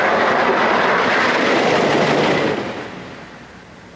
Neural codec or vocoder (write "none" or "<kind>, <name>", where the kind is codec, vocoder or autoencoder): none